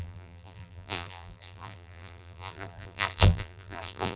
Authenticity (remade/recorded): remade